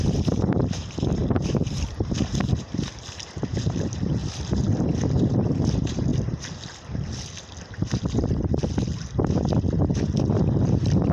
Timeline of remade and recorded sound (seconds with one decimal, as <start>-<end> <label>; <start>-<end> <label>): 0.0-4.2 remade; 4.2-5.2 recorded; 5.2-6.1 remade; 6.1-10.4 recorded; 10.4-11.1 remade